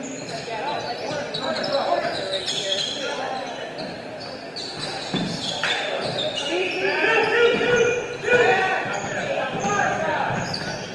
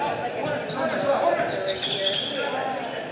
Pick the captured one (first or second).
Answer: second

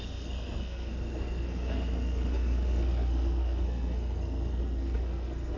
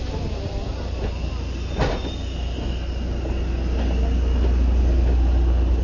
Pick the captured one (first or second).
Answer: second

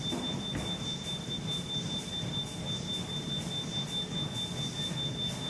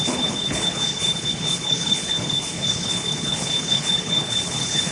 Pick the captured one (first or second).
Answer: first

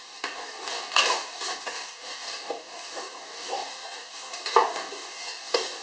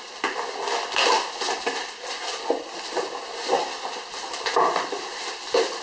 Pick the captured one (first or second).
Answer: second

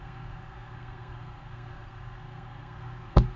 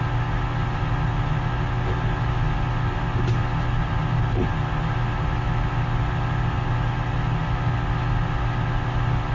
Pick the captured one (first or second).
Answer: second